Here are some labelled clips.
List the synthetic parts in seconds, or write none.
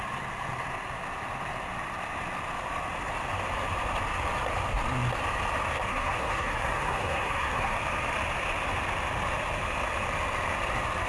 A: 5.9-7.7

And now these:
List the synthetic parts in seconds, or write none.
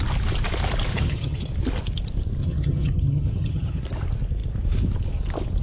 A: 0.9-1.5; 2.4-3.8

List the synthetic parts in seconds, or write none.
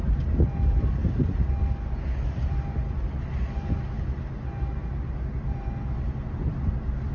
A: 4.8-5.7